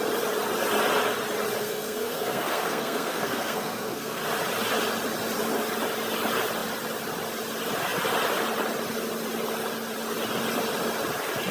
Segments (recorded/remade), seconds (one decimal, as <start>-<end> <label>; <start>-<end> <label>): 0.0-1.6 recorded; 1.6-4.2 remade; 4.2-11.5 recorded